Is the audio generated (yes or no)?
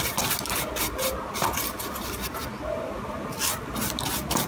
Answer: no